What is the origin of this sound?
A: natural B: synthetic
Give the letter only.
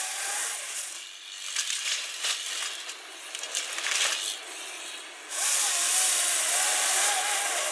A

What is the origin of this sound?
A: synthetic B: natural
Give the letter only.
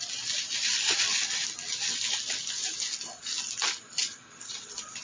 B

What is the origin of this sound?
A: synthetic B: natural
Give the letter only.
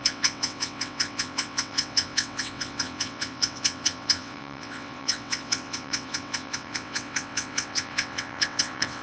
A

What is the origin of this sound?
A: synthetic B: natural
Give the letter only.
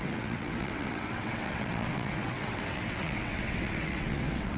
A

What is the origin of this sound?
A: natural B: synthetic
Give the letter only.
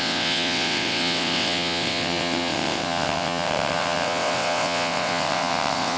B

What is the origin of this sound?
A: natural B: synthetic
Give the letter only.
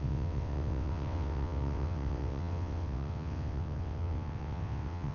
B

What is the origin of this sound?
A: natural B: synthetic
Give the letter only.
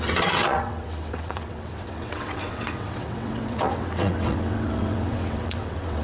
B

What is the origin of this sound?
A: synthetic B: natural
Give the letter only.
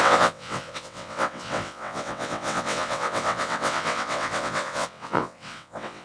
A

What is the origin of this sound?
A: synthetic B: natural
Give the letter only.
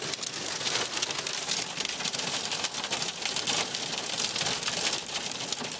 B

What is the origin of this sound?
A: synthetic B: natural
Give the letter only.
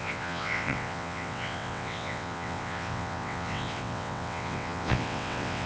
A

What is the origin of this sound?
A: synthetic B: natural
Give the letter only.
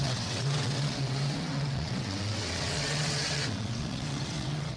A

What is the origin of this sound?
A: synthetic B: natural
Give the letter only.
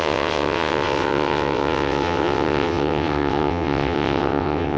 A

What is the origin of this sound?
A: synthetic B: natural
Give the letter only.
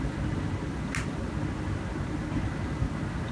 B